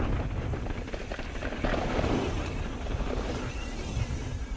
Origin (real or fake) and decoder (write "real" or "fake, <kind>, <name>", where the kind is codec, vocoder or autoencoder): real